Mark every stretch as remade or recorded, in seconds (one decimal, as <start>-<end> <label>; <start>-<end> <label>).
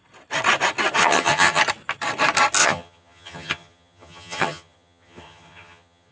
0.0-1.0 recorded; 1.0-1.6 remade; 1.6-2.6 recorded; 2.6-6.1 remade